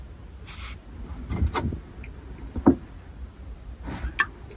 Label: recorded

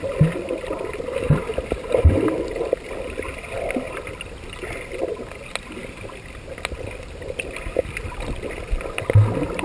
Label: recorded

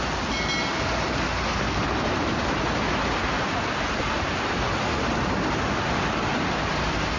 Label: recorded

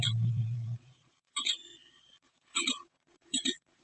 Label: remade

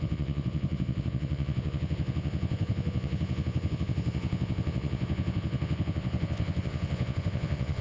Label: remade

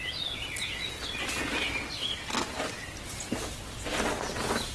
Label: recorded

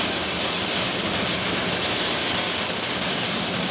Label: recorded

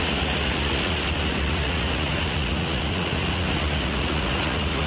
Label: remade